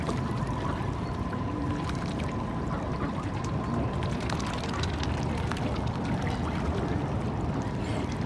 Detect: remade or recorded recorded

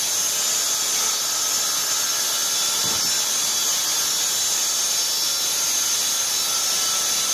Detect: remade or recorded recorded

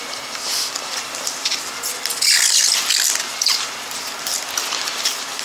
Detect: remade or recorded remade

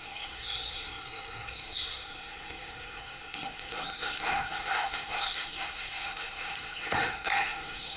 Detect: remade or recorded remade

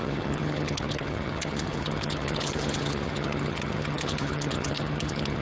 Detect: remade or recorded remade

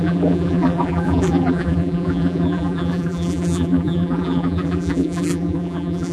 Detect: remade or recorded remade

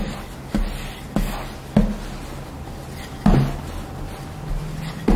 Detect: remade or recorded recorded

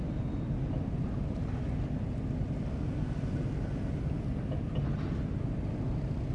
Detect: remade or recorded recorded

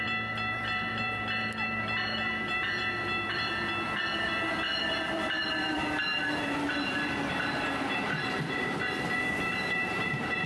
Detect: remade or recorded remade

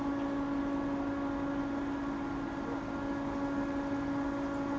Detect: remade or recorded recorded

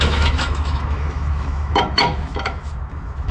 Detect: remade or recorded remade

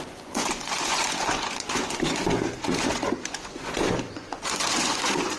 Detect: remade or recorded remade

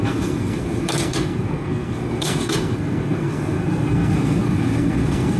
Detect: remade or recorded remade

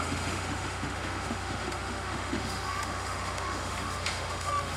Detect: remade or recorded remade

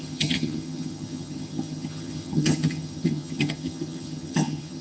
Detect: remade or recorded remade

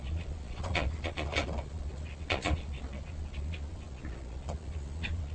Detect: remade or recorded remade